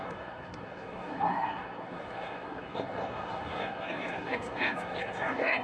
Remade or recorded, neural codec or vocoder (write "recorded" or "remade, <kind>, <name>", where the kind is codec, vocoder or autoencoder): remade, codec, SNAC